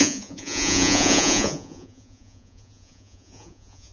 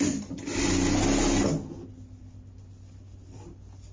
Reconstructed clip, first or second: first